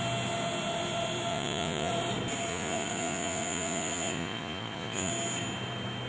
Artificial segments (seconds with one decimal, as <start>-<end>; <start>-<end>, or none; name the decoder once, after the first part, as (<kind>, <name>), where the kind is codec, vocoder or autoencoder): 1.3-1.9 (vocoder, Vocos); 2.5-5.1

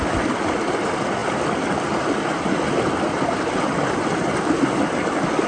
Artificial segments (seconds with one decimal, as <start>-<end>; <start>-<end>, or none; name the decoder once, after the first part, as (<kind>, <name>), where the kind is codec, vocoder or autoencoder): none

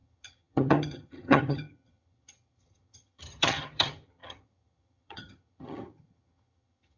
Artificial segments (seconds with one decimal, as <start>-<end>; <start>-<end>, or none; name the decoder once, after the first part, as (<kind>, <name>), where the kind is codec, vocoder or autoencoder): 0.0-7.0 (vocoder, HiFi-GAN)